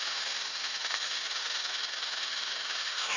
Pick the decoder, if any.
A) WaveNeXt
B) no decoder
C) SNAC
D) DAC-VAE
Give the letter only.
D